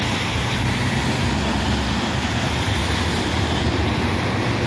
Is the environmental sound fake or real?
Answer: fake